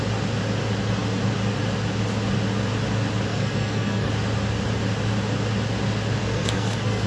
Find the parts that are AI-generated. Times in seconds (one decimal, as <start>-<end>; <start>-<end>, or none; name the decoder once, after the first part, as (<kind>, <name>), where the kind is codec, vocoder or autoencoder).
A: 3.3-4.1 (codec, SNAC); 6.2-7.1